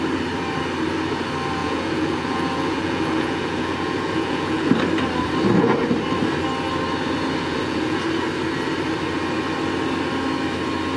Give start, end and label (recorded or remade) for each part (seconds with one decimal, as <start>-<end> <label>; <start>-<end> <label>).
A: 0.0-1.6 recorded; 1.6-4.7 remade; 4.7-7.4 recorded; 7.4-8.0 remade; 8.0-11.0 recorded